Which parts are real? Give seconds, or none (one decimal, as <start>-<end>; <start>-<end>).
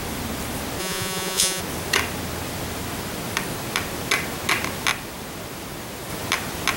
0.0-0.8; 1.6-6.8